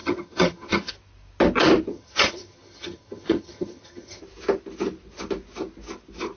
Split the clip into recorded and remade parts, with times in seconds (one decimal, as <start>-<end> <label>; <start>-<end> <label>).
0.0-0.9 remade; 0.9-1.9 recorded; 1.9-4.2 remade; 4.2-6.4 recorded

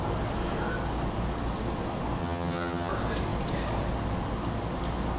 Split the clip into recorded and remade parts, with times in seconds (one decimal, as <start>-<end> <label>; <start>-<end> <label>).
0.0-2.2 recorded; 2.2-2.9 remade; 2.9-5.2 recorded

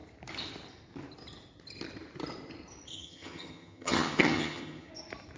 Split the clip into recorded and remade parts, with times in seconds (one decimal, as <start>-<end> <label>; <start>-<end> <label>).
0.0-2.9 recorded; 2.9-4.9 remade; 4.9-5.4 recorded

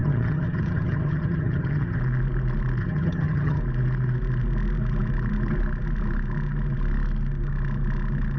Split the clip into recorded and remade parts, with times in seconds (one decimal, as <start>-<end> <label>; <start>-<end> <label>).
0.0-2.0 remade; 2.0-2.8 recorded; 2.8-3.6 remade; 3.6-8.4 recorded

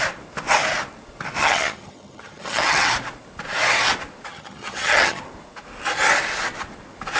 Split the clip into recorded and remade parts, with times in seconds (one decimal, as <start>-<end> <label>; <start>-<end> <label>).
0.0-1.4 recorded; 1.4-2.9 remade; 2.9-4.3 recorded; 4.3-5.2 remade; 5.2-7.2 recorded